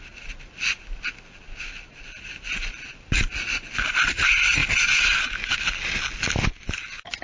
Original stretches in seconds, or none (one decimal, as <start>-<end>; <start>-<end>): 0.0-7.2